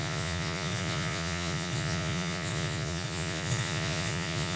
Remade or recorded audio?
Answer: remade